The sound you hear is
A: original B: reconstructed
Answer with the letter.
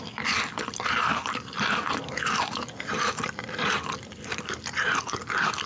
A